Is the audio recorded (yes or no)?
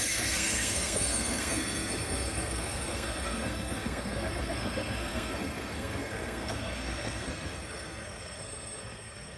no